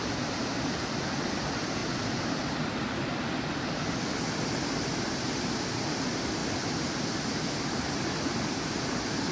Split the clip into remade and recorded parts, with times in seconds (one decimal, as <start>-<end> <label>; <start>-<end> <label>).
0.0-6.4 recorded; 6.4-7.2 remade; 7.2-9.3 recorded